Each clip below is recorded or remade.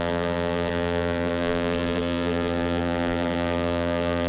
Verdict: remade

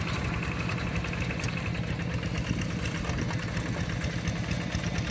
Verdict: recorded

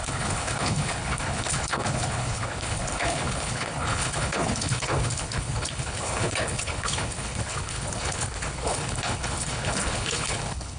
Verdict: remade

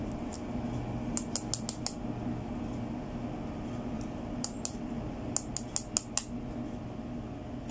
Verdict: recorded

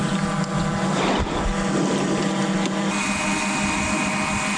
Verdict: recorded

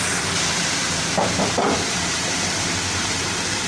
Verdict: remade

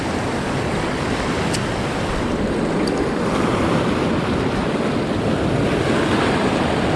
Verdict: recorded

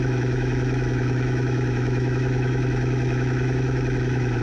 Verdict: remade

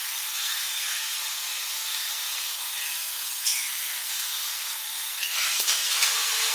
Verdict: remade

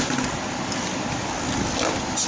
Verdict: recorded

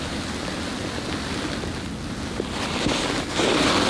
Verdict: recorded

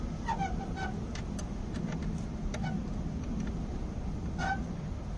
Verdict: recorded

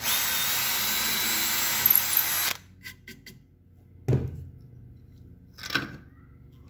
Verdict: recorded